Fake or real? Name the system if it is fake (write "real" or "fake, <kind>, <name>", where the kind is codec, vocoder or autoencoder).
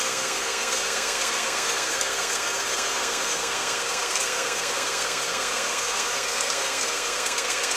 fake, codec, SNAC